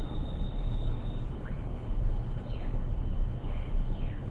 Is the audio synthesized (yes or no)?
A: yes